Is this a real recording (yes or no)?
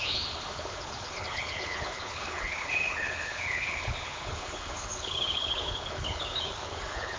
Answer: no